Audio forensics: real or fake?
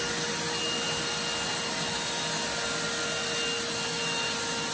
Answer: real